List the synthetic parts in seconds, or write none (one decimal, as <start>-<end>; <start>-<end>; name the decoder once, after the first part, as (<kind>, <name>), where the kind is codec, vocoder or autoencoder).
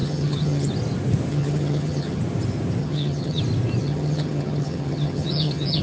0.0-0.7 (vocoder, HiFi-GAN); 1.3-2.2; 2.8-3.4; 3.8-5.8